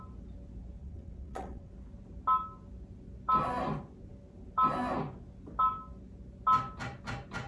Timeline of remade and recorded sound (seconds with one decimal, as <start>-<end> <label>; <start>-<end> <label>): 0.0-0.8 recorded; 0.8-1.7 remade; 1.7-7.5 recorded

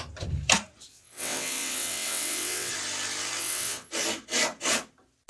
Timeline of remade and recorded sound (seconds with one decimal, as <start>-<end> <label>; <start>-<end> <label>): 0.0-0.9 recorded; 0.9-2.7 remade; 2.7-3.4 recorded; 3.4-3.9 remade; 3.9-5.3 recorded